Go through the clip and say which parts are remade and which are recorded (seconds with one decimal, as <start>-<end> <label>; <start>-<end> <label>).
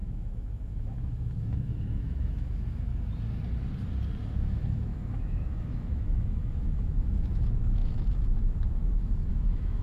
0.0-2.9 remade; 2.9-4.3 recorded; 4.3-9.8 remade